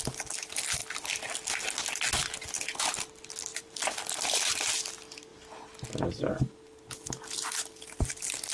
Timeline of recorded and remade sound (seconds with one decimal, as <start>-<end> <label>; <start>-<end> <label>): 0.0-3.5 recorded; 3.5-4.6 remade; 4.6-8.5 recorded